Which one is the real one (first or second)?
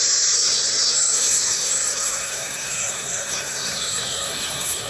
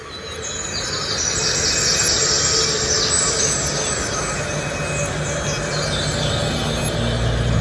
second